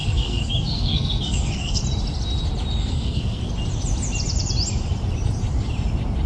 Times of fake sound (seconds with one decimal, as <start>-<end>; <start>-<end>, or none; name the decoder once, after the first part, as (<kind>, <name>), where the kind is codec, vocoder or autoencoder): 0.0-1.8 (codec, SNAC); 2.8-3.5